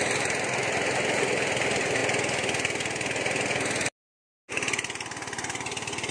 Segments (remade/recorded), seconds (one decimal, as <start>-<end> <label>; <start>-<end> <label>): 0.0-6.1 recorded